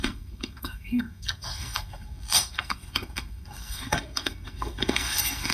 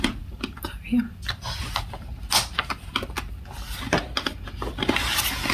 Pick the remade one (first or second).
first